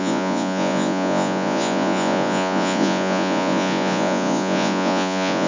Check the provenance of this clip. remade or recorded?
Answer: remade